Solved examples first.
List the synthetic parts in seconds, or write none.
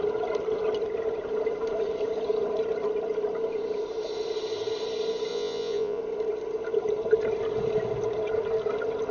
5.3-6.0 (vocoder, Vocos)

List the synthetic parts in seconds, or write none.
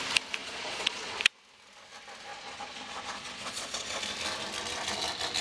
0.4-1.2 (vocoder, Vocos); 2.3-4.0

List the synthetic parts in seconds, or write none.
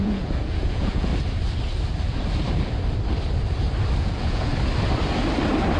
0.0-1.1 (vocoder, Vocos); 4.0-4.5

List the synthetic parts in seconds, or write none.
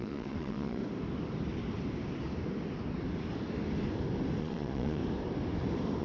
0.0-0.8 (vocoder, Vocos); 4.4-5.0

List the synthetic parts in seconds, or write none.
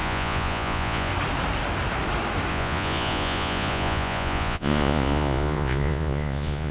0.0-1.1 (vocoder, Vocos); 2.5-6.7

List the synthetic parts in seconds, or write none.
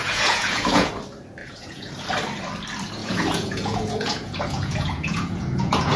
0.0-0.9 (vocoder, Vocos); 1.4-1.9; 3.0-6.0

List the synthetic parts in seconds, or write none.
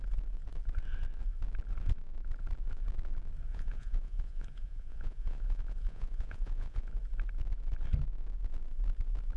3.5-6.9 (vocoder, Vocos)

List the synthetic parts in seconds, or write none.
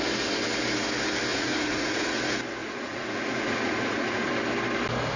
1.3-2.2 (vocoder, Vocos); 2.6-4.3